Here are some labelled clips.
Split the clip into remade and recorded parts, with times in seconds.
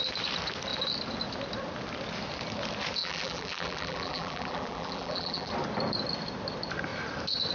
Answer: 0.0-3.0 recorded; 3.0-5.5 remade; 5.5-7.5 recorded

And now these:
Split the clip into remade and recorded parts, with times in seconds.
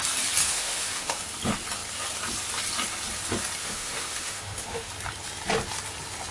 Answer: 0.0-0.4 recorded; 0.4-1.2 remade; 1.2-3.6 recorded; 3.6-4.9 remade; 4.9-6.3 recorded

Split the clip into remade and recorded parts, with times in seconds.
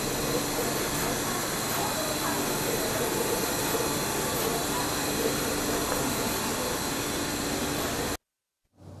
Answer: 0.0-4.5 recorded; 4.5-5.5 remade; 5.5-9.0 recorded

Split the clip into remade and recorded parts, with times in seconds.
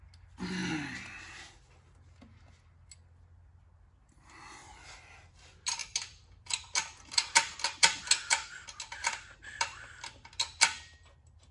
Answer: 0.0-11.5 recorded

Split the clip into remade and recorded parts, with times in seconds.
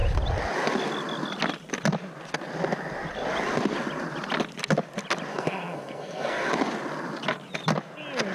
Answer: 0.0-5.3 recorded; 5.3-6.5 remade; 6.5-8.3 recorded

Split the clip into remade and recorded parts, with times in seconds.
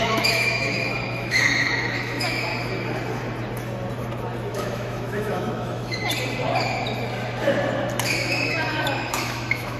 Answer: 0.0-2.5 remade; 2.5-4.5 recorded; 4.5-6.0 remade; 6.0-8.1 recorded; 8.1-9.8 remade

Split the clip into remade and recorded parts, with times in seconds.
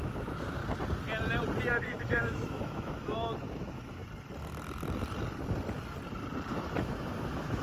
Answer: 0.0-0.6 remade; 0.6-1.8 recorded; 1.8-4.0 remade; 4.0-6.5 recorded; 6.5-7.6 remade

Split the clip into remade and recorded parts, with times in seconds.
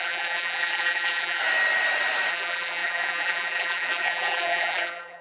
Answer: 0.0-1.4 remade; 1.4-2.3 recorded; 2.3-5.2 remade